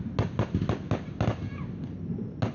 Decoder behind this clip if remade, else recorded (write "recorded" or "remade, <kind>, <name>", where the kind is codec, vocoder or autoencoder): recorded